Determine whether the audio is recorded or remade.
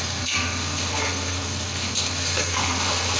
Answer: remade